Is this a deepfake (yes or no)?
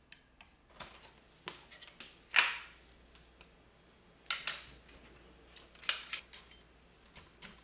no